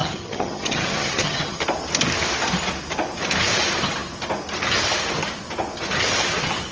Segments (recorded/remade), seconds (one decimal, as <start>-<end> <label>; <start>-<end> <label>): 0.0-1.6 remade; 1.6-6.7 recorded